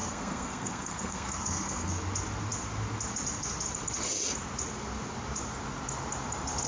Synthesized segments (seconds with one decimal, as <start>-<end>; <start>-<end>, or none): 0.0-1.9